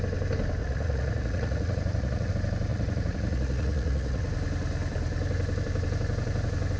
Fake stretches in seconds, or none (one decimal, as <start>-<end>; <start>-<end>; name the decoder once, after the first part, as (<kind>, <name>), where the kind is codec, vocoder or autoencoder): 0.6-2.3 (vocoder, Vocos); 2.7-4.3